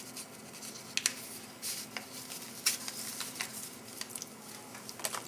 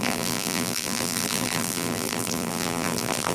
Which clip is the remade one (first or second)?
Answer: second